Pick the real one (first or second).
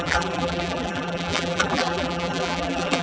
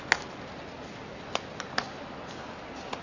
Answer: second